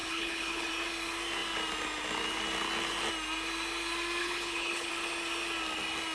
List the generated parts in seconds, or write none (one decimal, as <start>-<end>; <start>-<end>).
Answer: 0.0-0.7; 4.2-4.9